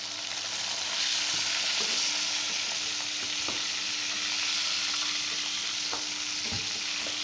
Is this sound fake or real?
real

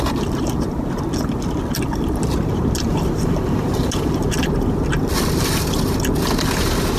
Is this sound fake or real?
real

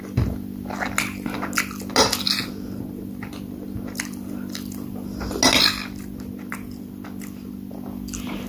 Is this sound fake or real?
real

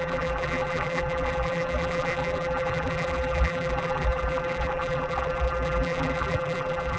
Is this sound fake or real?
fake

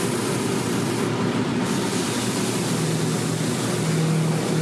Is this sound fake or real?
real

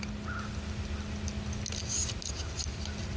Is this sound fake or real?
real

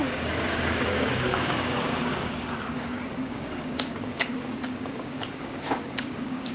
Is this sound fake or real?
fake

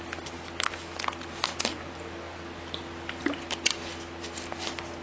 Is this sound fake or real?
real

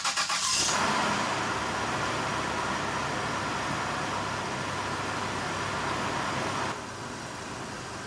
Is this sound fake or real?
real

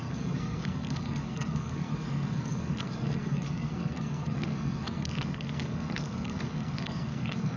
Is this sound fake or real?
fake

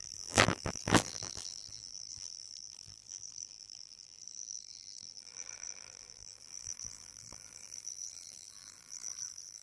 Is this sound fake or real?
fake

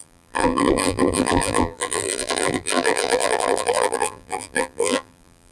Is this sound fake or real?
fake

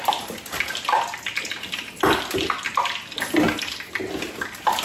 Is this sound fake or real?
real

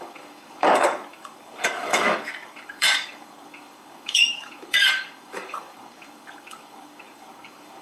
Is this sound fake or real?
fake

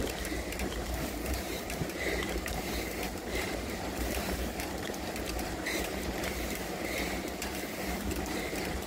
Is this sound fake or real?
fake